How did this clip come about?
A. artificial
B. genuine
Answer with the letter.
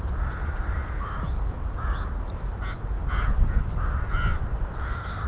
B